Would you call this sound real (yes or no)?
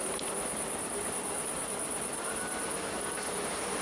no